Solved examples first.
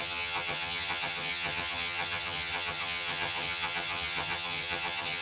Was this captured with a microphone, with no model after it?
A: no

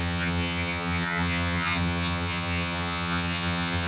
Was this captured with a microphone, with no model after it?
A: no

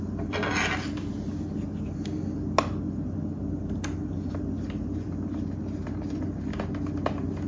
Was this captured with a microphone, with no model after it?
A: yes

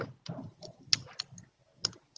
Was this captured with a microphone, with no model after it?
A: yes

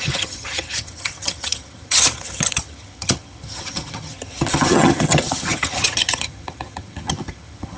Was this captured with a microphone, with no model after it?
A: no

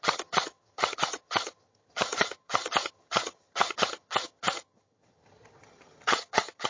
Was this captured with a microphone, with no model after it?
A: no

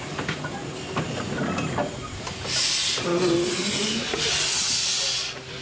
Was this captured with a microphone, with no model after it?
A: yes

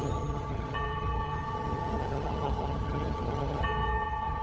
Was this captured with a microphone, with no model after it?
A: no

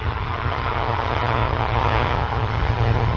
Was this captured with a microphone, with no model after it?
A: no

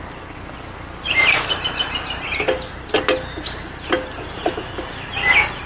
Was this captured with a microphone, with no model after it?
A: yes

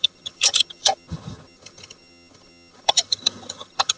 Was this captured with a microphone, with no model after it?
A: no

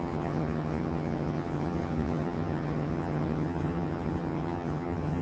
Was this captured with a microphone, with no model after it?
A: no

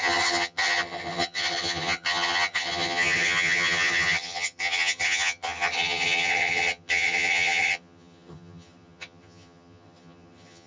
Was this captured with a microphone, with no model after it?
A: no